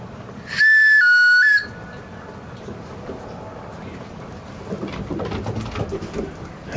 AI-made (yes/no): no